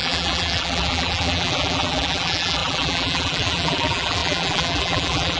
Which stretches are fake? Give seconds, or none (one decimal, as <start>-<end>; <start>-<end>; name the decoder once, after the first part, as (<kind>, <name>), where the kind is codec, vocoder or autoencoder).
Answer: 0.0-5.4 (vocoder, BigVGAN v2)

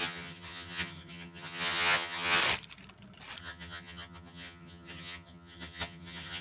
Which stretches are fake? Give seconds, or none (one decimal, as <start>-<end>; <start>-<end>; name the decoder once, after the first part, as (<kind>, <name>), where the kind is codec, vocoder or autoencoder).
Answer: 0.0-2.4 (vocoder, HiFi-GAN); 3.4-6.4

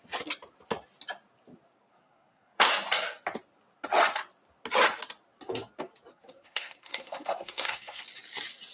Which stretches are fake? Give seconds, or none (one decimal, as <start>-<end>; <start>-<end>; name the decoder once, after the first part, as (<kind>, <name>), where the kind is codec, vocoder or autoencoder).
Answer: 1.9-2.7 (codec, SNAC); 6.1-8.0

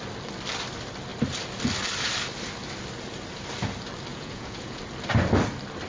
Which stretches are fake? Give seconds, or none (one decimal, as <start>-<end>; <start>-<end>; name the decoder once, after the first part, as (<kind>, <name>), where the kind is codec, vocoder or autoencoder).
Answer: 4.1-4.8 (vocoder, Vocos)